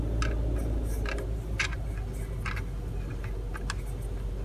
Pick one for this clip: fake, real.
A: real